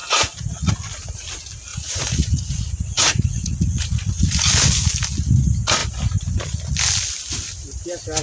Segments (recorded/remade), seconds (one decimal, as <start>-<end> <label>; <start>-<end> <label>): 0.0-0.7 remade; 0.7-1.7 recorded; 1.7-4.5 remade; 4.5-8.2 recorded